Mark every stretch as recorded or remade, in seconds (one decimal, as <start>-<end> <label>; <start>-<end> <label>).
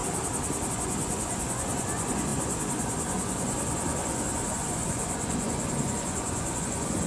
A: 0.0-0.7 recorded; 0.7-7.1 remade